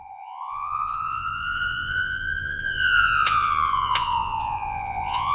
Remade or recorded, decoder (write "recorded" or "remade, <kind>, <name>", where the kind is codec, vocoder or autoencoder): remade, vocoder, Vocos